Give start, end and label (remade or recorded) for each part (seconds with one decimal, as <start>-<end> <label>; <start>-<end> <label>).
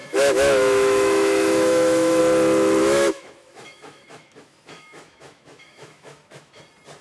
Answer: 0.0-2.2 remade; 2.2-2.8 recorded; 2.8-6.6 remade; 6.6-7.0 recorded